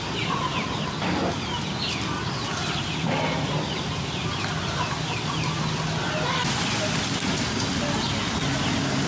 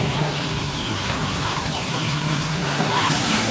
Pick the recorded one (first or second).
first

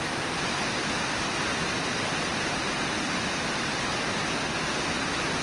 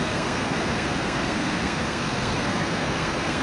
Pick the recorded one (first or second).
first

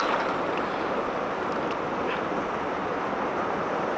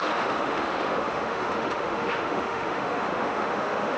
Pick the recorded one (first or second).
first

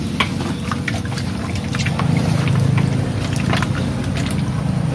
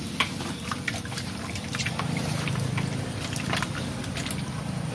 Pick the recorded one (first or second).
first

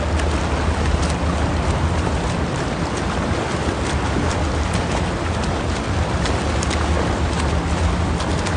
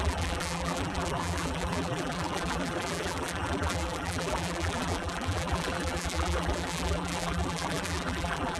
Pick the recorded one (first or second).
first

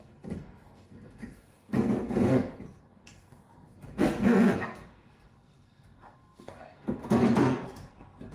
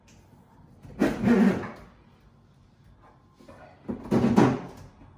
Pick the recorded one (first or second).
second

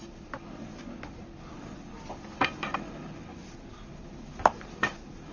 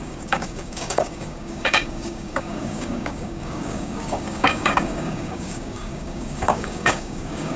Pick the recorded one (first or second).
first